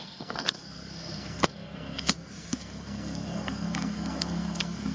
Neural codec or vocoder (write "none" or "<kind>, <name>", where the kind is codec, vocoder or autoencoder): codec, SNAC